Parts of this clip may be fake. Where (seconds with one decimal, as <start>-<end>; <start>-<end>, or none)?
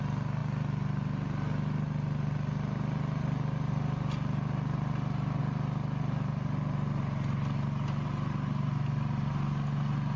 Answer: none